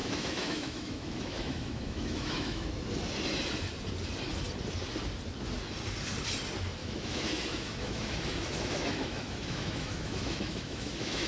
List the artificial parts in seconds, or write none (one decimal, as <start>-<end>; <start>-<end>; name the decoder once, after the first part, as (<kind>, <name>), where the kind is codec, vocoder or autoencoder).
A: 0.0-2.7 (autoencoder, DAC-VAE); 6.8-11.3